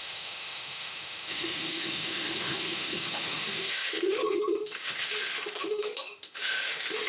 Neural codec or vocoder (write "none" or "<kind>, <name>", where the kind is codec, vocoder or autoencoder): autoencoder, DAC-VAE